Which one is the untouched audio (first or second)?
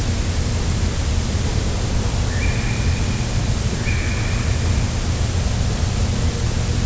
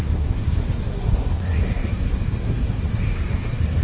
first